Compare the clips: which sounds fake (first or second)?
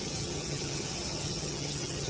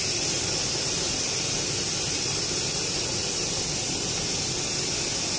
first